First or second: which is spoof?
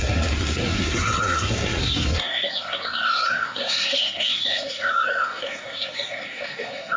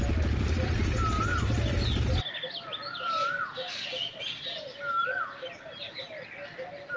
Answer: first